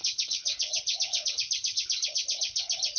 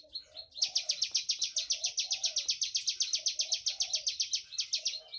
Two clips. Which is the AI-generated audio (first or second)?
first